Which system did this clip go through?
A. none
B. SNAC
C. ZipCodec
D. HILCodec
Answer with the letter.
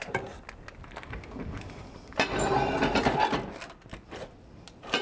A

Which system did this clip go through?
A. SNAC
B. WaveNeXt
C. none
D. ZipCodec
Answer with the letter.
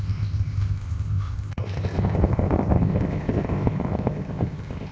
D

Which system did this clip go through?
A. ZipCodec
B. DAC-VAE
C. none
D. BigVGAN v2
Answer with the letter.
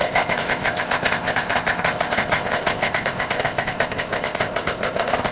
A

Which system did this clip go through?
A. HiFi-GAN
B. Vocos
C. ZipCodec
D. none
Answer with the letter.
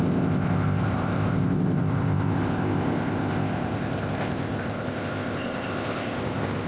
C